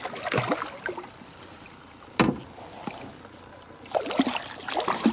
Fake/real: real